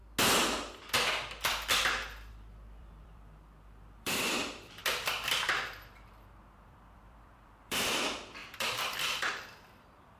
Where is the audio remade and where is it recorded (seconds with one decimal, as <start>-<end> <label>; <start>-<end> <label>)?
0.0-2.3 recorded; 2.3-4.8 remade; 4.8-6.6 recorded; 6.6-10.2 remade